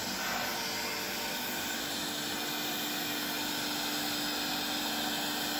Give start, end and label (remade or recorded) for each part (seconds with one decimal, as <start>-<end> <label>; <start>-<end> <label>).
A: 0.0-0.5 remade; 0.5-1.6 recorded; 1.6-2.0 remade; 2.0-5.6 recorded